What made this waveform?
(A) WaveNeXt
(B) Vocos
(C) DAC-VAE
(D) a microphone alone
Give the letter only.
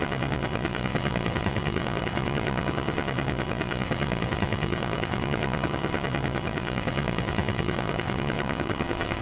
A